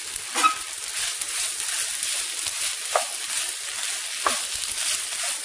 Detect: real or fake real